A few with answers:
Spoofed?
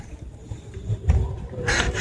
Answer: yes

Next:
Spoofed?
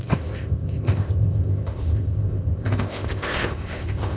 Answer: yes